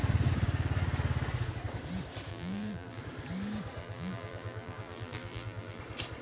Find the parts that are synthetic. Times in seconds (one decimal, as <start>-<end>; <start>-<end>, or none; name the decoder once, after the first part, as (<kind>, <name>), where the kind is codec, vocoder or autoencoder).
2.3-3.0 (vocoder, BigVGAN v2); 3.8-5.8